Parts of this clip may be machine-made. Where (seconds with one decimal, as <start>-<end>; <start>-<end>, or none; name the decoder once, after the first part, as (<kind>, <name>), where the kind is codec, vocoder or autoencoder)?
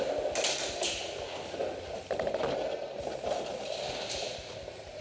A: none